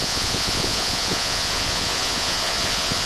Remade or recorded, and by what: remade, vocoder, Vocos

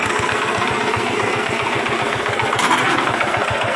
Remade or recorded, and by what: remade, codec, SNAC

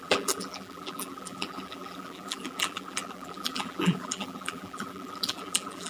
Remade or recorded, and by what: remade, vocoder, BigVGAN v2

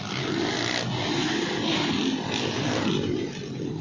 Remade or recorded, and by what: recorded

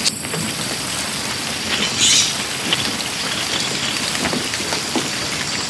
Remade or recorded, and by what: recorded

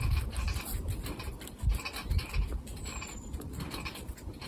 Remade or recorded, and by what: recorded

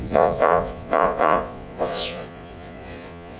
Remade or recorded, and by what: remade, vocoder, Vocos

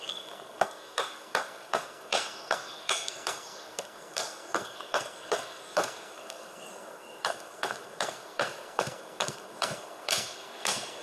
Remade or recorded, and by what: remade, codec, SNAC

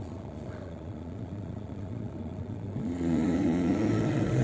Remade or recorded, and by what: remade, vocoder, Vocos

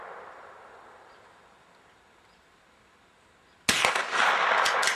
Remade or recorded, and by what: recorded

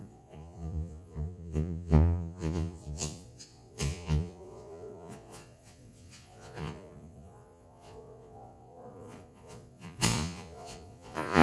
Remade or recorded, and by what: remade, vocoder, Vocos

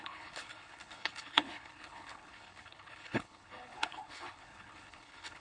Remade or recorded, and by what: remade, codec, HILCodec